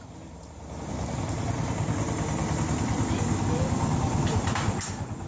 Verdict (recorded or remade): recorded